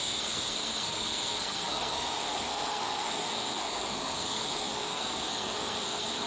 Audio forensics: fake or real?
fake